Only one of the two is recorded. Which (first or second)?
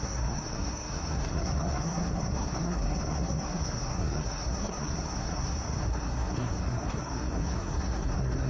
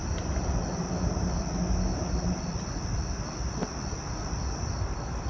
second